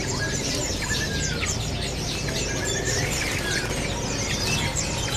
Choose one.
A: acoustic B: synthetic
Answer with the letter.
A